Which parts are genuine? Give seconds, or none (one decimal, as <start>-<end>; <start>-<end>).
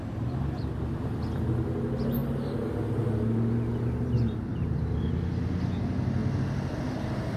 0.0-3.7; 4.9-7.4